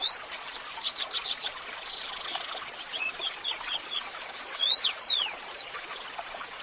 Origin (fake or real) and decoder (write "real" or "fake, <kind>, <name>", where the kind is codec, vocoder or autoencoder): fake, vocoder, Vocos